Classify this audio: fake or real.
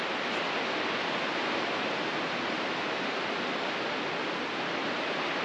real